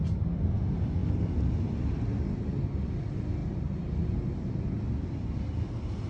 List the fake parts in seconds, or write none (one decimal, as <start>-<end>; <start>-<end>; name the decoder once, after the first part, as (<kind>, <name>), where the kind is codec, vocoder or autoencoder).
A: 3.4-4.5 (vocoder, BigVGAN v2)

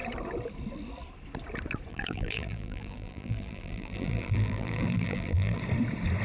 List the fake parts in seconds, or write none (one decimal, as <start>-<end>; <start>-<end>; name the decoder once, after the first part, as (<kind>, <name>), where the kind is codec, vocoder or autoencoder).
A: 1.9-5.6 (vocoder, BigVGAN v2)